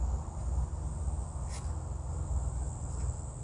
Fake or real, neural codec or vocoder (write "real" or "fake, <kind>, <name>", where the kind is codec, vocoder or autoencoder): real